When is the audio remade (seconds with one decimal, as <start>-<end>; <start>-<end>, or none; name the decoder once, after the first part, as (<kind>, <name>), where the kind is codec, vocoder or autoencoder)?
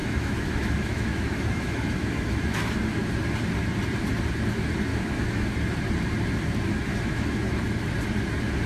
0.0-3.1 (autoencoder, DAC-VAE); 4.9-5.5; 6.9-7.6